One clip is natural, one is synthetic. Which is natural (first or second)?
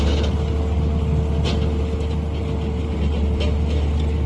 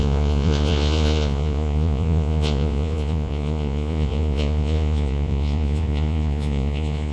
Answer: first